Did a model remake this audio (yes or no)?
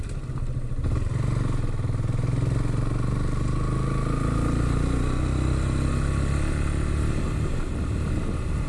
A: no